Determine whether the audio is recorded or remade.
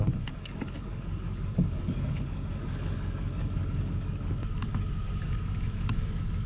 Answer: remade